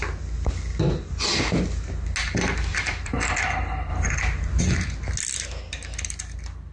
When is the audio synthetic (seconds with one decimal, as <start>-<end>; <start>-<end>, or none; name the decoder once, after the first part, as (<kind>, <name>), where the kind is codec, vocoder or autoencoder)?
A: 2.7-3.4 (vocoder, BigVGAN v2)